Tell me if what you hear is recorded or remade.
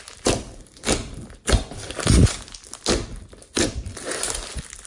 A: recorded